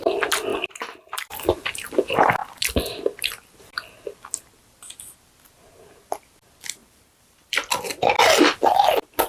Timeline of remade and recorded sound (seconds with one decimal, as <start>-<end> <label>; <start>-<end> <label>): 0.0-0.5 recorded; 0.5-1.9 remade; 1.9-6.8 recorded; 6.8-7.7 remade; 7.7-9.3 recorded